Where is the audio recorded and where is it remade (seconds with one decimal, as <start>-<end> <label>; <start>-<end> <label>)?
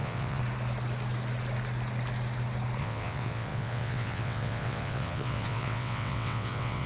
0.0-0.4 remade; 0.4-2.8 recorded; 2.8-6.9 remade